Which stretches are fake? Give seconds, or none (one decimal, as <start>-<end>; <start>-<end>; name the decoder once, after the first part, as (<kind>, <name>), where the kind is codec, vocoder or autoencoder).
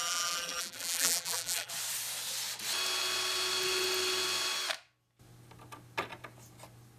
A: 0.0-1.7 (vocoder, BigVGAN v2)